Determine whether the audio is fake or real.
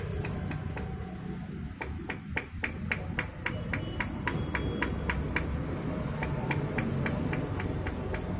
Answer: real